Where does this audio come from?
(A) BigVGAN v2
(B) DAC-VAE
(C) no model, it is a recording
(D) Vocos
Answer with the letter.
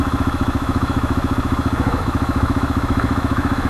B